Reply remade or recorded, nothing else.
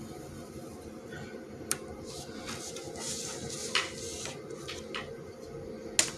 recorded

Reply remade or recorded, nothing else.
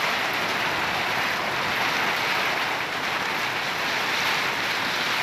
recorded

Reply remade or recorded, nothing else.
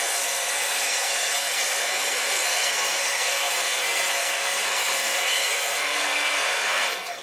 remade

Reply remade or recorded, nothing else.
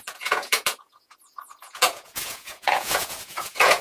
remade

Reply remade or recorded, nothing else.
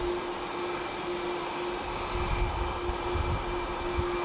recorded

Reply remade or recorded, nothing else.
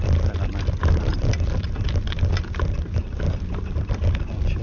recorded